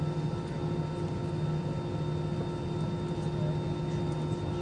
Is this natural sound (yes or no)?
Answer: yes